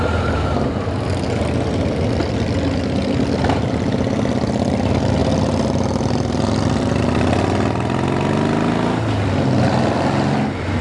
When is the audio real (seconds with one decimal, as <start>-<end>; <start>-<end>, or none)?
0.0-10.8